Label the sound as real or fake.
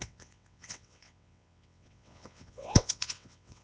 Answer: fake